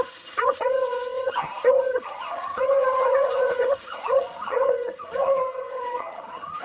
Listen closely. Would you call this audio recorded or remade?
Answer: remade